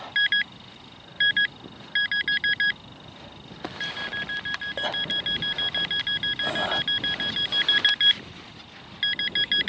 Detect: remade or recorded recorded